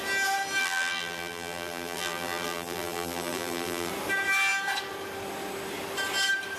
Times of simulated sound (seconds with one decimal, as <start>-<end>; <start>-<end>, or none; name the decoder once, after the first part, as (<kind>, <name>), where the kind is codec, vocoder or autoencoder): 0.6-3.9 (vocoder, BigVGAN v2)